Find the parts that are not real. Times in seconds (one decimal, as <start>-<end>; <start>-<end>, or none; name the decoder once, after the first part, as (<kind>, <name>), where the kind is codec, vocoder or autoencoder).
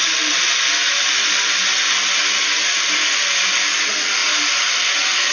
4.2-5.3 (vocoder, BigVGAN v2)